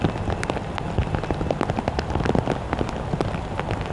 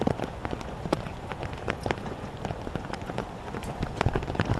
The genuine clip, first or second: first